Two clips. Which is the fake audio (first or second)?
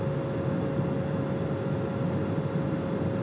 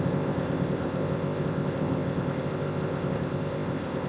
second